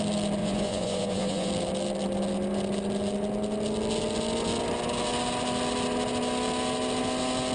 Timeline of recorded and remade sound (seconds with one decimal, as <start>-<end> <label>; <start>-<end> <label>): 0.0-0.4 recorded; 0.4-1.5 remade; 1.5-7.5 recorded